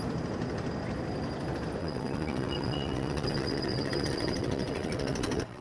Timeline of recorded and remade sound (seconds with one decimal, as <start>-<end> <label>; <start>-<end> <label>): 0.0-1.8 recorded; 1.8-5.6 remade